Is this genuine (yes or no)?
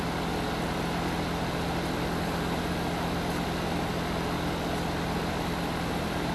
yes